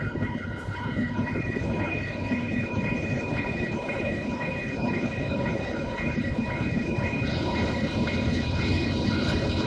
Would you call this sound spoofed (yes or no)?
yes